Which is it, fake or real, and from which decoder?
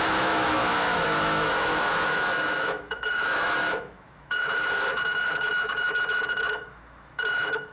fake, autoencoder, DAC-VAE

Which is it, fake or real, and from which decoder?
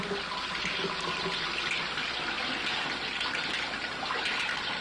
real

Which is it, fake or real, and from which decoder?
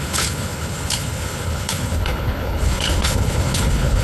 fake, codec, HILCodec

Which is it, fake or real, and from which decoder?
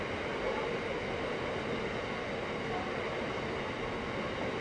real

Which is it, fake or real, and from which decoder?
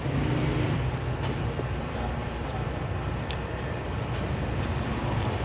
fake, vocoder, BigVGAN v2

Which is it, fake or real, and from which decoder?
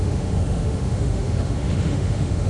fake, autoencoder, DAC-VAE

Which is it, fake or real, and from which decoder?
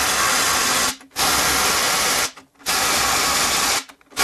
real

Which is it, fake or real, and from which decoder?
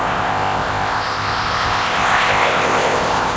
fake, codec, ZipCodec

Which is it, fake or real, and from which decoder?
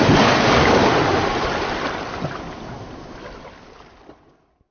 real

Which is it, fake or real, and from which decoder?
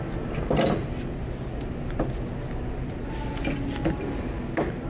real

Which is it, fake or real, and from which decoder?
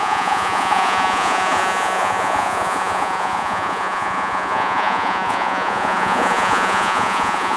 fake, vocoder, Vocos